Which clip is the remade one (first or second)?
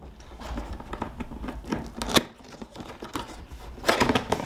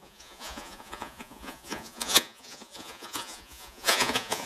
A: second